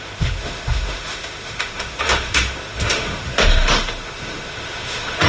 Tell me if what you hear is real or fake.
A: fake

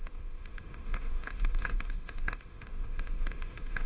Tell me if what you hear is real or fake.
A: fake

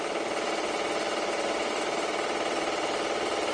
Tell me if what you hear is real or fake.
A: real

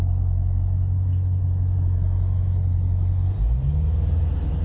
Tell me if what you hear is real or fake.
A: real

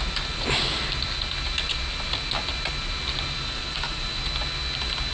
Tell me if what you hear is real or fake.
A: real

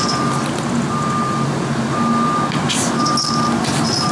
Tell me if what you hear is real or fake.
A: real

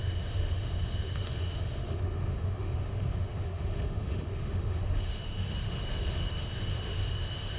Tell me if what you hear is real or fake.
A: fake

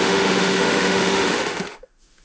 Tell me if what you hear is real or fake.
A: fake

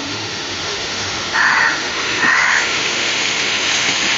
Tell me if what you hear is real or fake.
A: fake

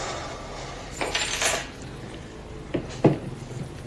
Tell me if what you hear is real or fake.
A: real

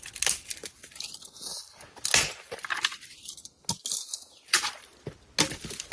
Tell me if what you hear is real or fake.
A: real